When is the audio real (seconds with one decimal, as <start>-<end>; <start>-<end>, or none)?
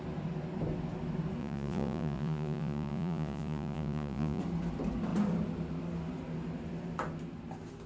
0.0-1.4; 4.4-7.9